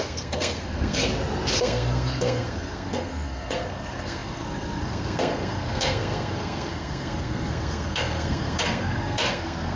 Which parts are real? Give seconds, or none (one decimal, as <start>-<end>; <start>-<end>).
1.0-1.6